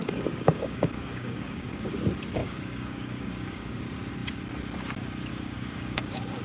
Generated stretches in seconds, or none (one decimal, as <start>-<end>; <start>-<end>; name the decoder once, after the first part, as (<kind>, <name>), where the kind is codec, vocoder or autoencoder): 0.0-1.9 (codec, DAC); 2.4-3.8; 5.3-6.4